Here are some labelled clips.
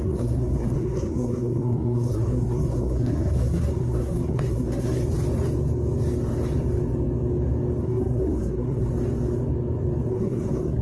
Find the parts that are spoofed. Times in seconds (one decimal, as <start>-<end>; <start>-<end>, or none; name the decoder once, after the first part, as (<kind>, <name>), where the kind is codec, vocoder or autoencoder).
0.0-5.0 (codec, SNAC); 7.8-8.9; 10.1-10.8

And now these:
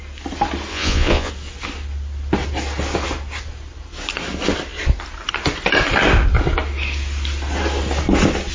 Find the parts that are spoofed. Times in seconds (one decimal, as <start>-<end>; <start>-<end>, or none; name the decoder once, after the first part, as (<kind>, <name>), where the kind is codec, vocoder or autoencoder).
0.7-1.3 (vocoder, Vocos)

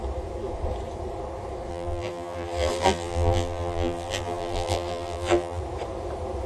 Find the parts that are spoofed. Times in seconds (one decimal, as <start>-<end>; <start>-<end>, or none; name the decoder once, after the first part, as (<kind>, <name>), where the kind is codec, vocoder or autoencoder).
1.7-5.6 (vocoder, BigVGAN v2)

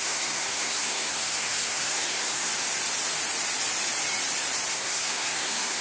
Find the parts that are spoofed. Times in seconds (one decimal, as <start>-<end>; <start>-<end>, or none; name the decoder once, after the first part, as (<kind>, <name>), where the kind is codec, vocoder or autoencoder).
0.0-2.5 (codec, SNAC); 4.7-5.8